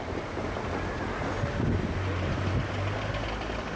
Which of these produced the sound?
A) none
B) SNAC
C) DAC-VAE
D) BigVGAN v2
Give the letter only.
A